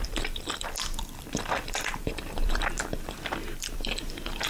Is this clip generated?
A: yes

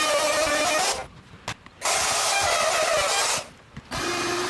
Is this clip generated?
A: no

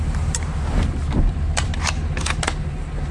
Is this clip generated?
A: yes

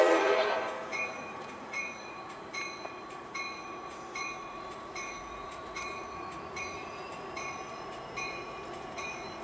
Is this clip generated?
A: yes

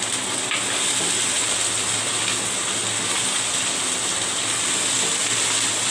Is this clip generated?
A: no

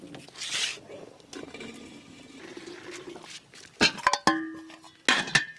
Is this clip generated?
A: no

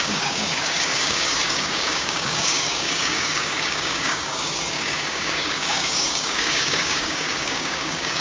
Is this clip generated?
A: yes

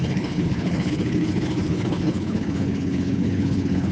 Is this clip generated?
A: yes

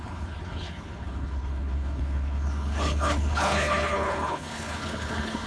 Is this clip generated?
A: yes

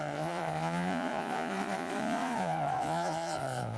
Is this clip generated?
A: yes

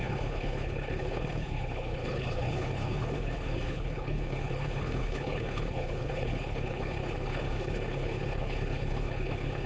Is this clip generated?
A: yes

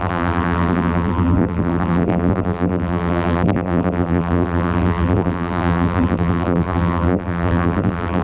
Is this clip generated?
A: yes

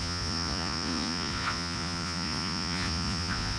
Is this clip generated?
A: yes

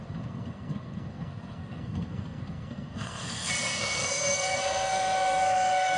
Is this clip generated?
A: yes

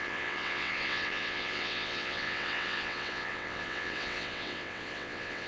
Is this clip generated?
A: yes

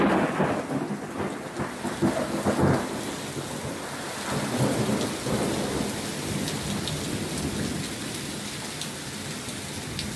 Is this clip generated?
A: no